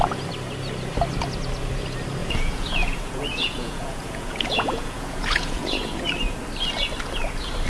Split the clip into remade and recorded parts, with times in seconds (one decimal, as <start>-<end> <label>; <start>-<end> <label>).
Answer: 0.0-2.2 recorded; 2.2-6.0 remade; 6.0-7.7 recorded